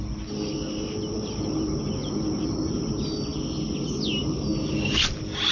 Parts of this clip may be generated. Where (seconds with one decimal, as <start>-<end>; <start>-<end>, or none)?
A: 1.1-2.9